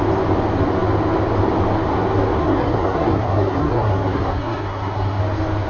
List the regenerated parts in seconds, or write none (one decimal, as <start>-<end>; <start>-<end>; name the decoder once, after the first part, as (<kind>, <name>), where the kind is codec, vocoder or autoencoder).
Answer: 2.4-5.2 (codec, SNAC)